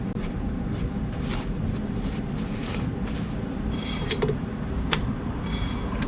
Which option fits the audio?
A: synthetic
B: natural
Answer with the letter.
A